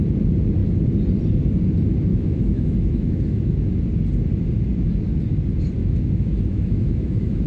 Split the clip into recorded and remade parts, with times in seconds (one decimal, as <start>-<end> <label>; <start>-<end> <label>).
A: 0.0-2.1 recorded; 2.1-3.7 remade; 3.7-5.8 recorded; 5.8-7.5 remade